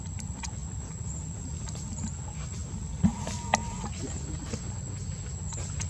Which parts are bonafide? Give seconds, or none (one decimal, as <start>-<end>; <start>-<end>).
0.0-5.9